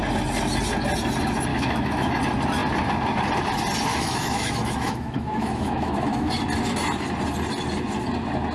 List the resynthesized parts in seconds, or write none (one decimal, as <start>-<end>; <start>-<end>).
1.5-2.2; 3.9-6.3